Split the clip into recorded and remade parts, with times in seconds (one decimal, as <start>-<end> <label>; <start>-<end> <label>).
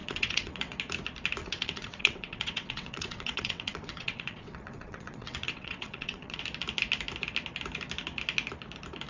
0.0-0.8 remade; 0.8-1.4 recorded; 1.4-6.4 remade; 6.4-9.1 recorded